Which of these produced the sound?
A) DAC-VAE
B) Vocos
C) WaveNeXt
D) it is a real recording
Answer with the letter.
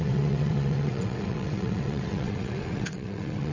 C